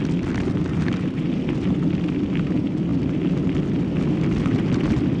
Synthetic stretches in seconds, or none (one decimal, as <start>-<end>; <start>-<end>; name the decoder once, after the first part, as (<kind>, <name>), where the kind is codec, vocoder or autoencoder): none